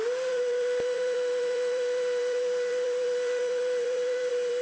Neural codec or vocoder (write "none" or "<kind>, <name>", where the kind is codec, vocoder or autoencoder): vocoder, BigVGAN v2